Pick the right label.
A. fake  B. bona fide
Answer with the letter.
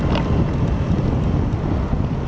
B